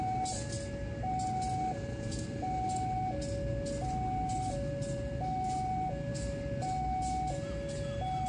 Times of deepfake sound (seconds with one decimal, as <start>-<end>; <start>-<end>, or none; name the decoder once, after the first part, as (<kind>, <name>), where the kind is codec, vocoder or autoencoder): none